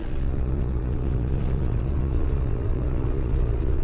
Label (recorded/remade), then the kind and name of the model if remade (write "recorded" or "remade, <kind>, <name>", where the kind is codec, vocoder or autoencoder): remade, vocoder, Vocos